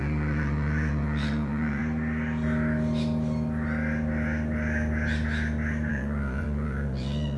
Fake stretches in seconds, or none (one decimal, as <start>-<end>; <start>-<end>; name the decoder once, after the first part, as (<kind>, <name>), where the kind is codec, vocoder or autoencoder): 0.0-1.8 (vocoder, Vocos); 5.9-7.4